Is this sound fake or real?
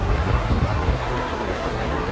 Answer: fake